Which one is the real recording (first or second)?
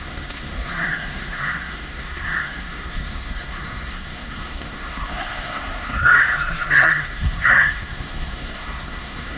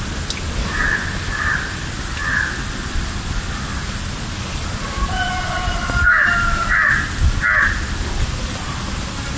second